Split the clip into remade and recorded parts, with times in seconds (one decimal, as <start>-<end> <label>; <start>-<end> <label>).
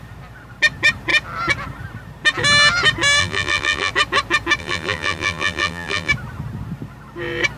0.0-3.2 recorded; 3.2-3.9 remade; 3.9-4.6 recorded; 4.6-6.1 remade; 6.1-7.6 recorded